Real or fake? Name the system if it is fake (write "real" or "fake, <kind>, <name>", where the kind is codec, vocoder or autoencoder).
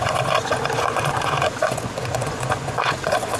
fake, vocoder, Vocos